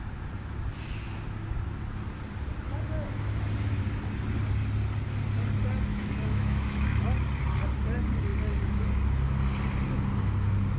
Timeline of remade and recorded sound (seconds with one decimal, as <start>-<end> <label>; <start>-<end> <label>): 0.0-5.9 recorded; 5.9-7.0 remade; 7.0-10.8 recorded